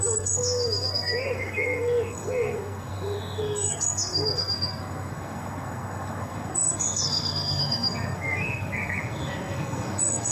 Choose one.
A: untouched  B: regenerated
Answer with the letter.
B